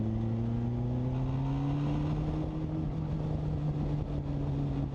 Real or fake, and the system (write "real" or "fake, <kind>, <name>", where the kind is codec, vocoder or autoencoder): real